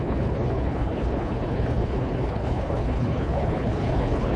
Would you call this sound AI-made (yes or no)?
yes